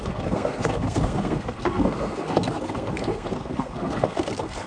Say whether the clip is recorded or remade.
remade